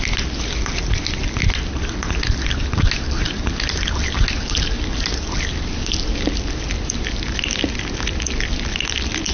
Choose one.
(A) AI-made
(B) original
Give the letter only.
B